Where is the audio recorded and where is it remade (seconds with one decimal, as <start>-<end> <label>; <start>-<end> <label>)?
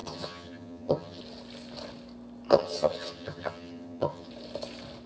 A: 0.0-1.2 remade; 1.2-2.5 recorded; 2.5-4.3 remade; 4.3-5.1 recorded